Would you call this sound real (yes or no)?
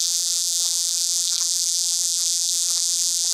no